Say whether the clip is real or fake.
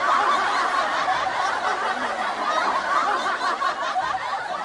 real